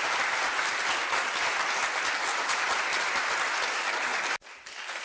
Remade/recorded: recorded